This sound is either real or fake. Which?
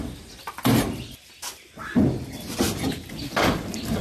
real